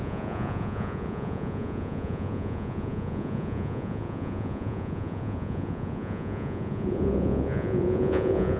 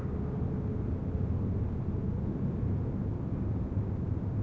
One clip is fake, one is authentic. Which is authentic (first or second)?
second